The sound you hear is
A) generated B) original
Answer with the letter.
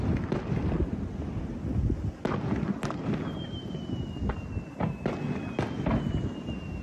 B